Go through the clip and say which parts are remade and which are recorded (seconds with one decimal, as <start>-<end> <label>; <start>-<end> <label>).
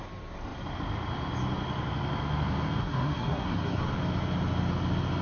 0.0-2.8 recorded; 2.8-3.8 remade; 3.8-5.2 recorded